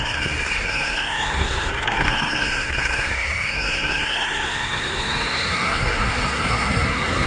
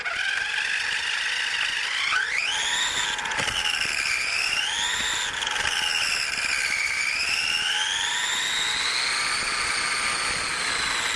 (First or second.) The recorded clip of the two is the second